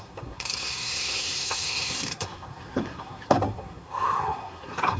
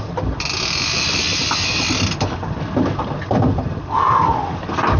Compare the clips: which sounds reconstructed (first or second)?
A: first